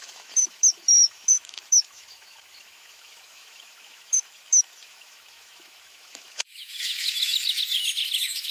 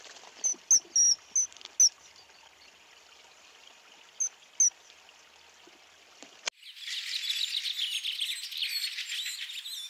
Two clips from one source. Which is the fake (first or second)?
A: first